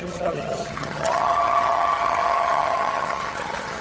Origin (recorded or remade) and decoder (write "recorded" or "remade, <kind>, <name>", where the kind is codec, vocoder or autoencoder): remade, vocoder, HiFi-GAN